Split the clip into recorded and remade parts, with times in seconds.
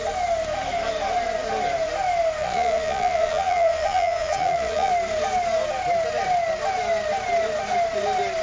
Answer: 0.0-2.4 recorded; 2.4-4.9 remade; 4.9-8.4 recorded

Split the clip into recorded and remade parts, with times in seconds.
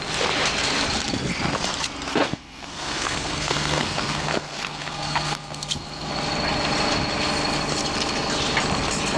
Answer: 0.0-2.1 recorded; 2.1-6.1 remade; 6.1-9.2 recorded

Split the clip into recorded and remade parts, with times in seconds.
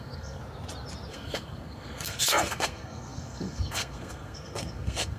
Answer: 0.0-0.4 remade; 0.4-1.1 recorded; 1.1-5.2 remade